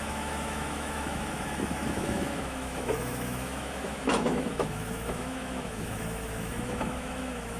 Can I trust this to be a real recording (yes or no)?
no